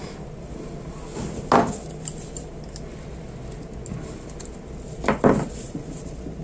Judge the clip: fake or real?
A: real